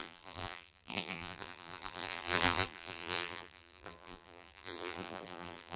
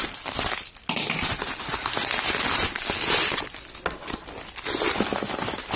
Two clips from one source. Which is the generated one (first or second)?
first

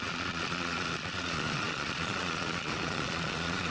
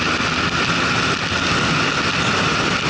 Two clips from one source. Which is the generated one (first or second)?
first